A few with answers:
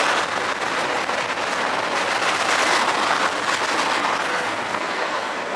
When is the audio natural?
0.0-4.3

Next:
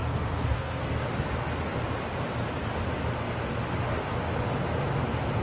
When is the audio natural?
0.8-5.4

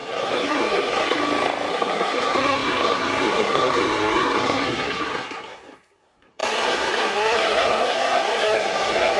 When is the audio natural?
1.2-1.7